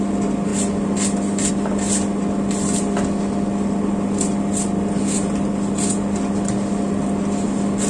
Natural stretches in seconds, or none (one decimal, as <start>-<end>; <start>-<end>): 0.0-7.9